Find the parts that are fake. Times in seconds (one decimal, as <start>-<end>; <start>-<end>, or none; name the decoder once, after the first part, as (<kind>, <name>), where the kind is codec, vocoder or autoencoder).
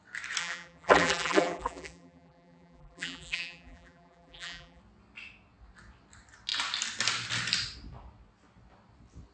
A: 0.4-4.8 (vocoder, BigVGAN v2)